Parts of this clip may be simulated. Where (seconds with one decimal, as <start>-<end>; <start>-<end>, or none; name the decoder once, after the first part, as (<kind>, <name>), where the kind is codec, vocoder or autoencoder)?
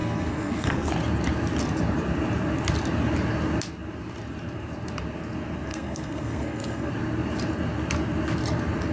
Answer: 0.0-0.9 (codec, SNAC); 5.7-6.9